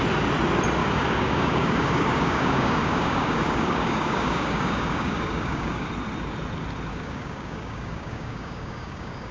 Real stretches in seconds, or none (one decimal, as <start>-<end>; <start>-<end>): 0.0-0.8; 5.9-6.9

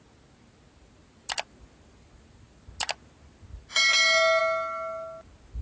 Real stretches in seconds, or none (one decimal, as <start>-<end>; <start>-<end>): 0.0-5.6

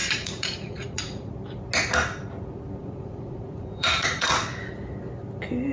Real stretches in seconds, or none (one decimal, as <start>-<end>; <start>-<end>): 1.3-2.8; 4.3-5.7